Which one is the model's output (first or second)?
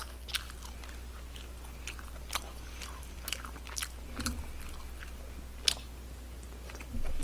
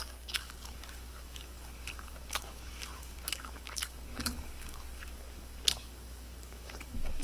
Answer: second